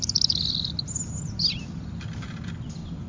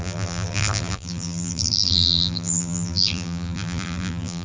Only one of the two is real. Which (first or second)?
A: first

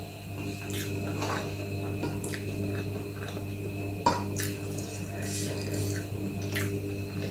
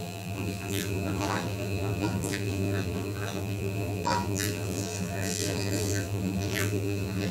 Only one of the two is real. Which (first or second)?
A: first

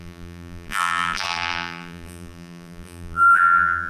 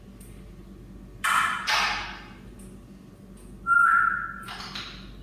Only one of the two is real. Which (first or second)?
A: second